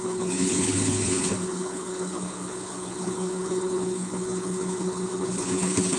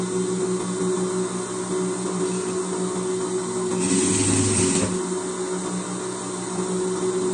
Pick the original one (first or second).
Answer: second